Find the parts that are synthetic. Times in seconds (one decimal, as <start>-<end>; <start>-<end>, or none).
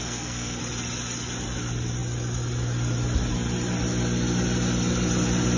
0.0-0.6